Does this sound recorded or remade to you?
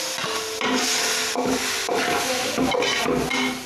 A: recorded